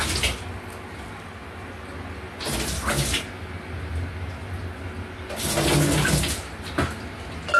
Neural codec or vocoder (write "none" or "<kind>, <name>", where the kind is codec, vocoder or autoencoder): none